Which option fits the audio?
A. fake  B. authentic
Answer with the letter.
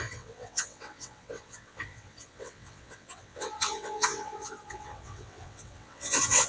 A